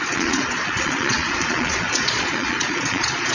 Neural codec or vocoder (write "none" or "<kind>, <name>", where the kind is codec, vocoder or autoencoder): vocoder, Vocos